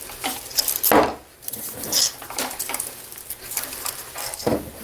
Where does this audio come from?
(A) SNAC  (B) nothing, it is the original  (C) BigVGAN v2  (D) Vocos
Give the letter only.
B